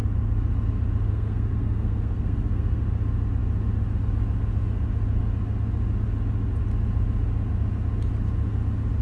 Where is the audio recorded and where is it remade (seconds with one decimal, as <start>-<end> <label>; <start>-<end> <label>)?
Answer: 0.0-1.1 recorded; 1.1-2.8 remade; 2.8-9.0 recorded